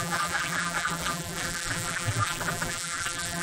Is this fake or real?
fake